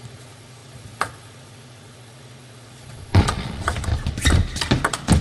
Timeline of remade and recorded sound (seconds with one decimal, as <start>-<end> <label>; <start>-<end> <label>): 0.0-3.9 remade; 3.9-5.2 recorded